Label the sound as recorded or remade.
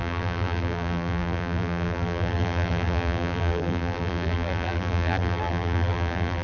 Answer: remade